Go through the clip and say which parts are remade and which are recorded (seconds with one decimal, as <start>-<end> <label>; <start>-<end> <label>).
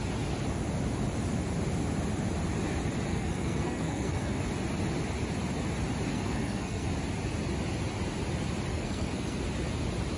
0.0-3.1 recorded; 3.1-4.4 remade; 4.4-6.1 recorded; 6.1-6.9 remade; 6.9-8.7 recorded; 8.7-9.4 remade; 9.4-10.2 recorded